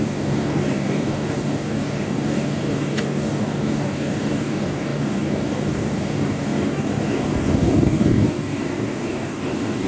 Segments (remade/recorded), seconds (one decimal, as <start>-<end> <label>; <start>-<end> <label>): 0.0-9.9 remade